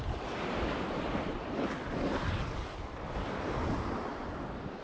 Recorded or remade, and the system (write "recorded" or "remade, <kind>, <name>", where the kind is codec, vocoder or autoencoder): remade, vocoder, BigVGAN v2